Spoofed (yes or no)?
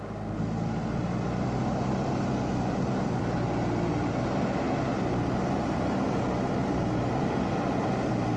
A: no